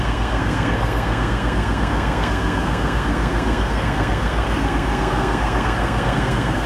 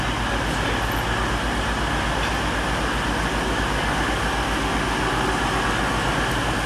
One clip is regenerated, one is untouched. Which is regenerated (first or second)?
first